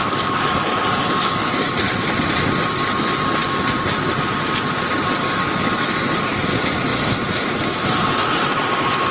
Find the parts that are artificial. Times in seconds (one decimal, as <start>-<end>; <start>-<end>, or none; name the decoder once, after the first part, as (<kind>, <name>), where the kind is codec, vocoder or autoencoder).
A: 0.0-1.7 (codec, DAC); 5.2-6.4